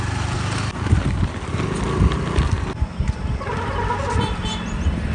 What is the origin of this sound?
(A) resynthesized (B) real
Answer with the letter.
B